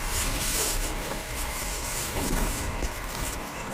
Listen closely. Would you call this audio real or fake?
fake